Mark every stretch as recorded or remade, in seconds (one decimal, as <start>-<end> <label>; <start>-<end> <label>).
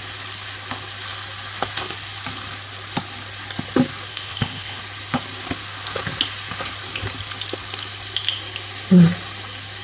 0.0-4.1 recorded; 4.1-4.8 remade; 4.8-9.8 recorded